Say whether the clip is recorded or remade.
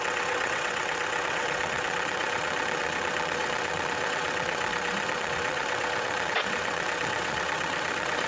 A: remade